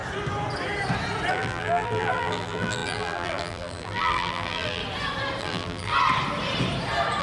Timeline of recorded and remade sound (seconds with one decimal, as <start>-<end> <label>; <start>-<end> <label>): 0.0-1.3 recorded; 1.3-4.8 remade; 4.8-5.4 recorded; 5.4-5.9 remade; 5.9-7.2 recorded